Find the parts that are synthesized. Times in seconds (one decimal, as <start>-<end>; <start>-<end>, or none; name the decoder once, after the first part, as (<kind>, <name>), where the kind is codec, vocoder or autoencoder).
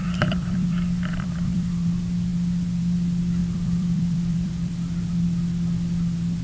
0.0-1.9 (vocoder, BigVGAN v2); 3.4-4.7